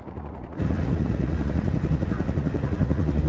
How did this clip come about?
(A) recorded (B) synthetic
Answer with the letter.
B